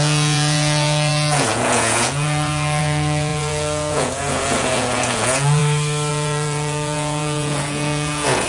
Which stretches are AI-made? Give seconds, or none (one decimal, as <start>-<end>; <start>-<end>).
0.0-5.6; 6.1-8.5